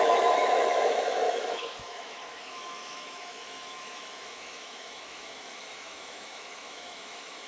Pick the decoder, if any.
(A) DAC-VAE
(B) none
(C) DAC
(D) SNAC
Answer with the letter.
A